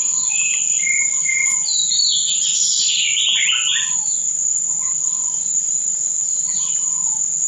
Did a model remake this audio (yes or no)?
yes